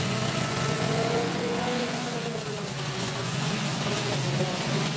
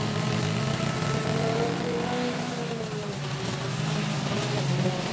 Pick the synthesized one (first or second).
first